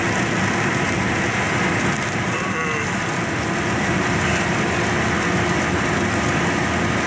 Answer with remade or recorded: recorded